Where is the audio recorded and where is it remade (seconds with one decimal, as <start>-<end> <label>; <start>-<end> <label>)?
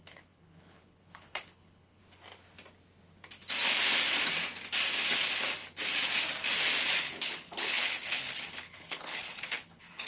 0.0-2.0 remade; 2.0-7.0 recorded; 7.0-10.1 remade